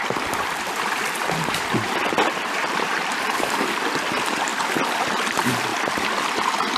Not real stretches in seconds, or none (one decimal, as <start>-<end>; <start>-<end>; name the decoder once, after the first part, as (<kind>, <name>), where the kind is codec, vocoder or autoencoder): 0.0-4.5 (vocoder, BigVGAN v2); 5.2-5.7